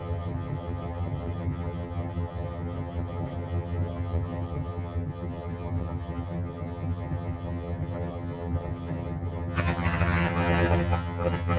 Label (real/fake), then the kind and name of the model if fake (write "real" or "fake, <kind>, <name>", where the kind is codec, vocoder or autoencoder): fake, vocoder, HiFi-GAN